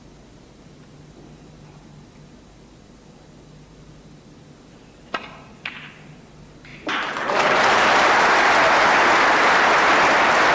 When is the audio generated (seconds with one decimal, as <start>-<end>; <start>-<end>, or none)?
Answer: 6.7-8.1